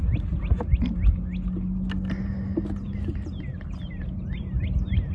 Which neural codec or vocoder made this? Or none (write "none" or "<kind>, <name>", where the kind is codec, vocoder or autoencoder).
none